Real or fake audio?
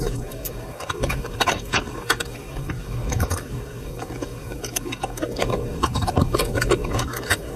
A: fake